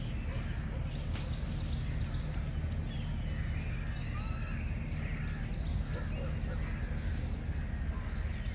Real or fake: real